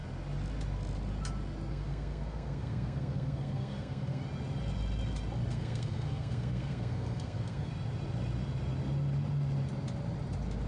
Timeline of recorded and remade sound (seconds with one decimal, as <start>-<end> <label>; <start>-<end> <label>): 0.0-1.7 recorded; 1.7-4.2 remade; 4.2-5.5 recorded; 5.5-7.7 remade; 7.7-10.7 recorded